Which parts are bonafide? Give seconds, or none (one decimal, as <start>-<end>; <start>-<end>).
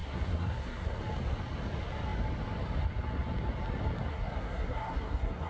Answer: 1.0-4.1